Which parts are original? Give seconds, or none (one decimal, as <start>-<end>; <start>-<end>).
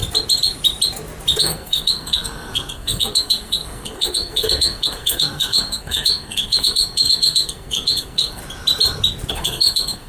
0.0-1.4; 8.4-9.3